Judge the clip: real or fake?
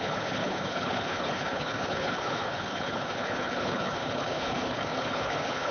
fake